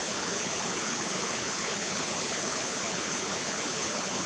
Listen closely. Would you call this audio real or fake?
fake